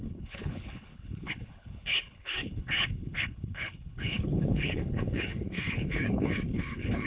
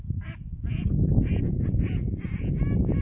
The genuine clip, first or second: second